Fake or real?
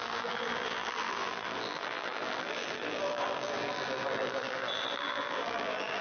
fake